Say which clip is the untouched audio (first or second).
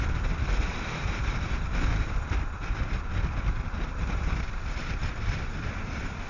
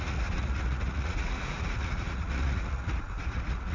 first